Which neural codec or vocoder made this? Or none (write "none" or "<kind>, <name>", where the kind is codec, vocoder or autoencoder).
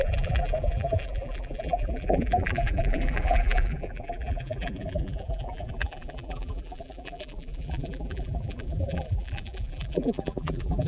vocoder, BigVGAN v2